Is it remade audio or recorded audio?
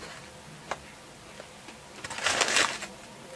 recorded